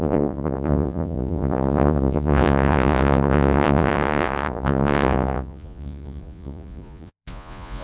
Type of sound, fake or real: fake